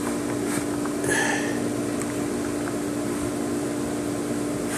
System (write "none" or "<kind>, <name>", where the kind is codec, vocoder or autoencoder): none